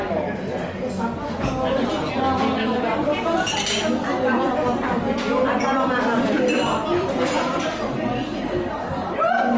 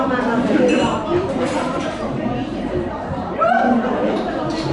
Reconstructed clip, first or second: second